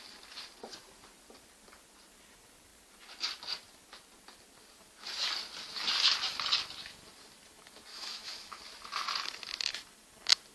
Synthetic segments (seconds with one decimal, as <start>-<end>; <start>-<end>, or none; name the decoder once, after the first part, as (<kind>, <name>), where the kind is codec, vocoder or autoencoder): 7.9-8.6 (autoencoder, DAC-VAE)